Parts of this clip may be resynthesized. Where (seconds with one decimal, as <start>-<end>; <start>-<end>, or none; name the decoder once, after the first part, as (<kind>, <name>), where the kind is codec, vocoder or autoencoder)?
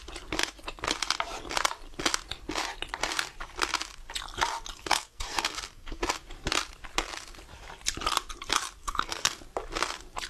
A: 4.8-6.0 (codec, SNAC); 8.8-9.4